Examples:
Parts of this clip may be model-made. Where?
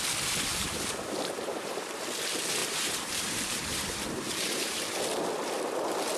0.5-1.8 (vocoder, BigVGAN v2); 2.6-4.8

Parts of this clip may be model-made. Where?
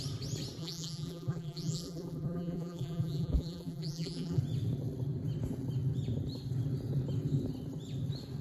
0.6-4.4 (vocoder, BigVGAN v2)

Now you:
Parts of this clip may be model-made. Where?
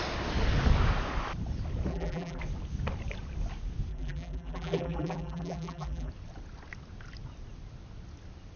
1.9-2.4 (vocoder, BigVGAN v2); 3.9-6.1